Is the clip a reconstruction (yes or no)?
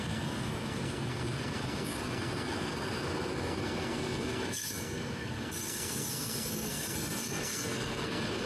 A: yes